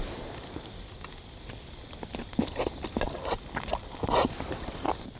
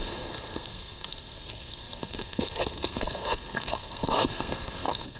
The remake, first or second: second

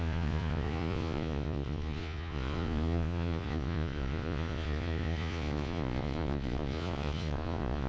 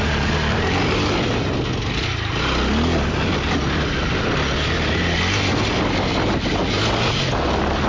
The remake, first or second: first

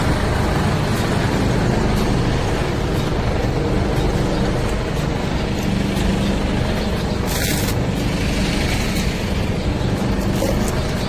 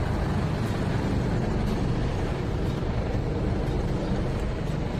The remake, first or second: second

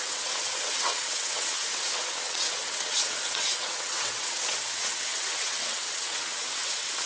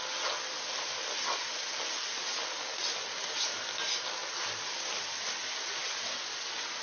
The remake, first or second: first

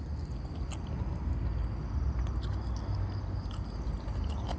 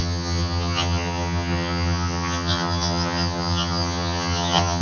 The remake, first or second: second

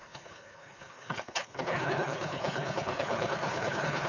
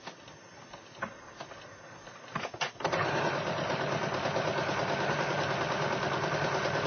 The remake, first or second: first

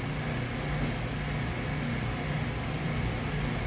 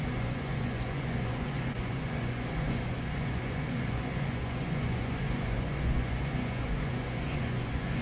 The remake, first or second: second